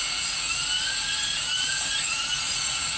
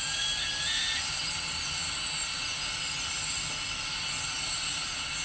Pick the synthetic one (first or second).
first